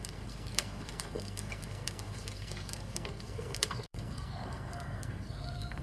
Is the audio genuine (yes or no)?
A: no